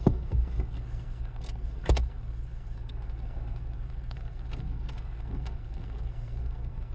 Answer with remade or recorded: remade